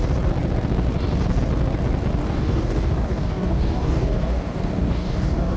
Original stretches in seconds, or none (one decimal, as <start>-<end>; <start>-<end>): 0.0-2.2